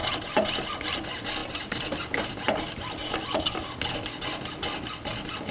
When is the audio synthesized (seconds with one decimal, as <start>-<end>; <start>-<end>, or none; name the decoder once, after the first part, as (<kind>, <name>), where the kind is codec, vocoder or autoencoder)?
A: none